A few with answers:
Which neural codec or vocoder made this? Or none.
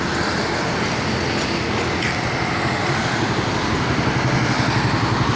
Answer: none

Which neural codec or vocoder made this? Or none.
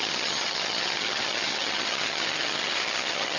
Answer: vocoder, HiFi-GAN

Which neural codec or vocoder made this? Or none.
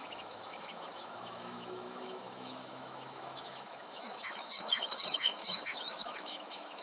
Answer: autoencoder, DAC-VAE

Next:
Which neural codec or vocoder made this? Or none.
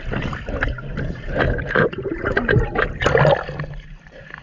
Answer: none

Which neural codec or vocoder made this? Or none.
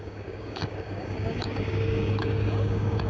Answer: codec, DAC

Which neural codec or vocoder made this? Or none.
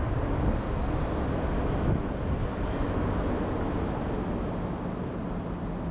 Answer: none